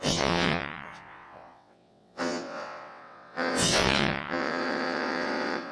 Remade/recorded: remade